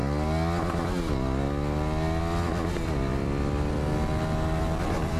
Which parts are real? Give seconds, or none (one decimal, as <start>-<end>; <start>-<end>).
0.0-3.1; 3.7-5.2